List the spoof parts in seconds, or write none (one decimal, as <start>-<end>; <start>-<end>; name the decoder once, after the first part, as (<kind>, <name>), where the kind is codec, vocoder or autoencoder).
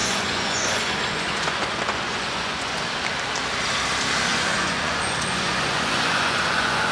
0.0-2.8 (vocoder, Vocos); 4.3-6.9